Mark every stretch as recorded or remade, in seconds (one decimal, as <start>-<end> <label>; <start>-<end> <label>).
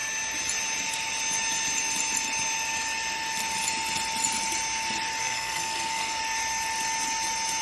0.0-5.2 recorded; 5.2-6.2 remade; 6.2-7.6 recorded